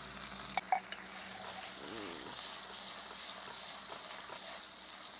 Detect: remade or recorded recorded